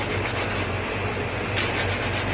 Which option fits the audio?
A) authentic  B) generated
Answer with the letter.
A